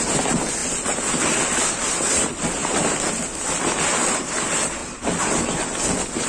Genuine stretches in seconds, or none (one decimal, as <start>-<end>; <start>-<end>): 0.0-0.6; 1.8-2.6; 4.3-4.8